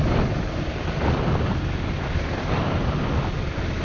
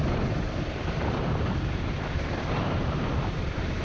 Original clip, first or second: first